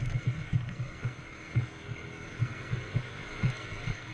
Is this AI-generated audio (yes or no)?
yes